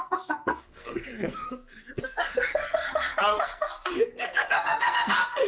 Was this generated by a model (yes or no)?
yes